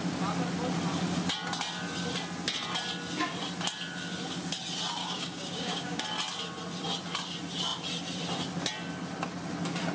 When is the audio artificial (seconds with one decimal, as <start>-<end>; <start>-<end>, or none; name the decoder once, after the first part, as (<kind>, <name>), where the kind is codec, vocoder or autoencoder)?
5.0-6.0 (codec, DAC)